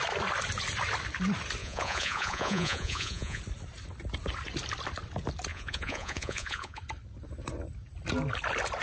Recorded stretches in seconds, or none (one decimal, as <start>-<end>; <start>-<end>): 0.0-1.6; 3.4-5.5; 6.8-8.8